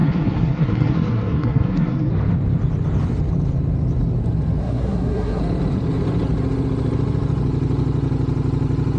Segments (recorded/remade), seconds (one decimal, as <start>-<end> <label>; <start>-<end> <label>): 0.0-2.1 remade; 2.1-4.6 recorded; 4.6-5.4 remade; 5.4-9.0 recorded